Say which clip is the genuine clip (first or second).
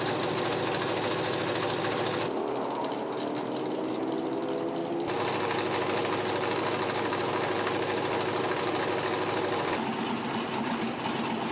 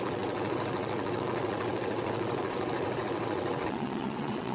first